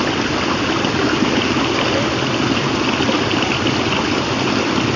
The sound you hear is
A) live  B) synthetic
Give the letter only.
A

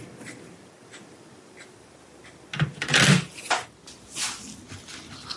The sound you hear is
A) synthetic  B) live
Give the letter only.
B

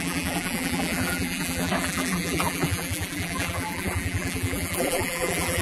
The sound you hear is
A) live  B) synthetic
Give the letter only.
B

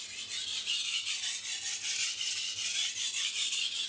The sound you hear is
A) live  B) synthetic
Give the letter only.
A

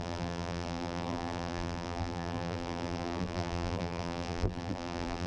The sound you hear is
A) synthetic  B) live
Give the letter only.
A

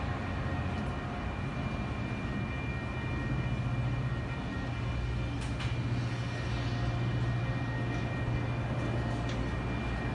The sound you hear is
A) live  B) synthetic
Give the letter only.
A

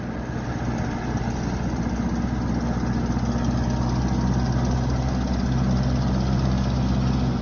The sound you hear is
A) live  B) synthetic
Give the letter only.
A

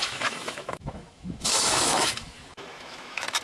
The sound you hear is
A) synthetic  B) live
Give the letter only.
A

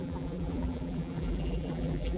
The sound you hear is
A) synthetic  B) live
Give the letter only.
A